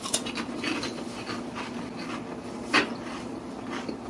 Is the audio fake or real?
real